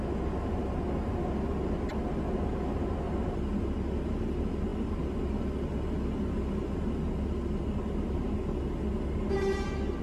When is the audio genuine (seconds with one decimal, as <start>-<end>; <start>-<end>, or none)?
0.0-10.0